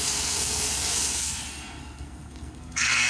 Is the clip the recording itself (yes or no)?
no